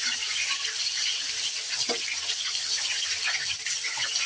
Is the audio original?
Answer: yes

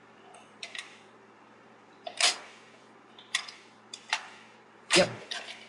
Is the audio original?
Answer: no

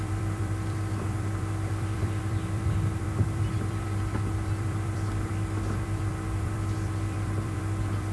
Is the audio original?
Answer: no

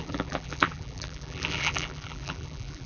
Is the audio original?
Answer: no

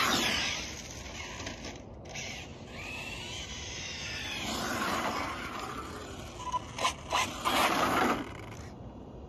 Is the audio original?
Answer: yes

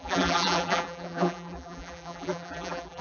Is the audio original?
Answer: no